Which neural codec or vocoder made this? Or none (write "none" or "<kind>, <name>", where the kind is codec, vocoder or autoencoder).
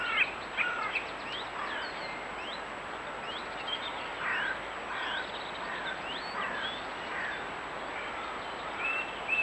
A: none